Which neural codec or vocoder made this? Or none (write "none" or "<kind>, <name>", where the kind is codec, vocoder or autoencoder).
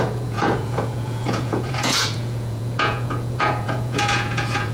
vocoder, Vocos